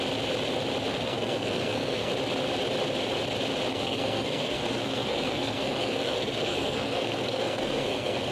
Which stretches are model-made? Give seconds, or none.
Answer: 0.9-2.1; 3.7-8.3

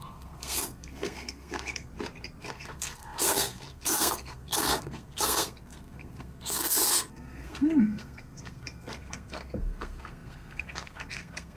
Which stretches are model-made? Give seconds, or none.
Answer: 0.0-1.9; 2.4-11.6